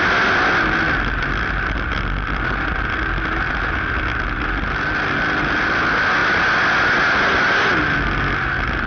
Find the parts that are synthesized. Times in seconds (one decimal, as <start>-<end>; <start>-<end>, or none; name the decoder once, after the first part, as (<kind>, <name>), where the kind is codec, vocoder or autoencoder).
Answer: none